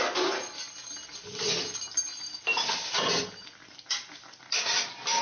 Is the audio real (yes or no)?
yes